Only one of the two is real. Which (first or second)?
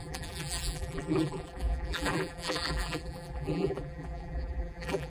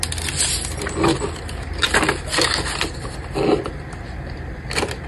second